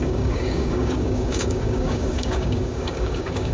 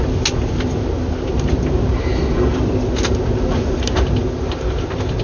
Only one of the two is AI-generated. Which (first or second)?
first